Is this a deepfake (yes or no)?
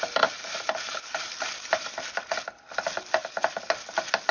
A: no